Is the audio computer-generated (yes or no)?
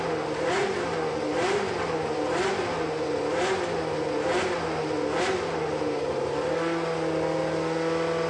no